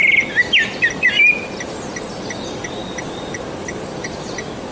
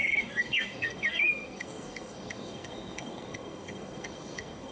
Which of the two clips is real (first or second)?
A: first